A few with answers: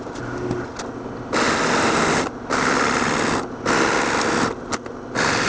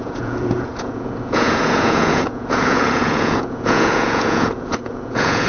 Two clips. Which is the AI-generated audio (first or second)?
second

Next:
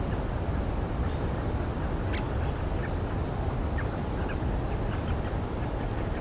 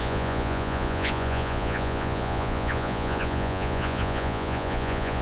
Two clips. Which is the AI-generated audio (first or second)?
second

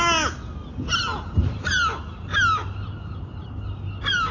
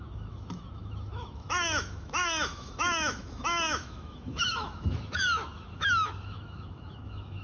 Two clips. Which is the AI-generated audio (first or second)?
second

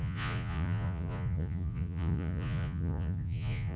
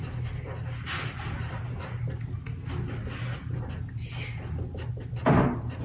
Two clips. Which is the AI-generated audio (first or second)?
first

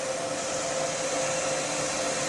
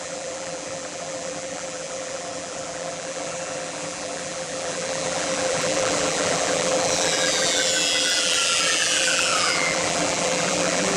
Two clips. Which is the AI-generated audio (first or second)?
second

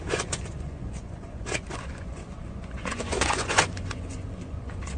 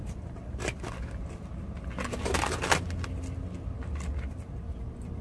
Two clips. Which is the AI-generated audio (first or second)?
first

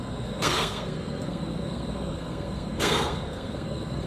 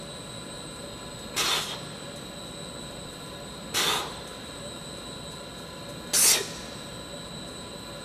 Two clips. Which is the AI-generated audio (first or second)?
first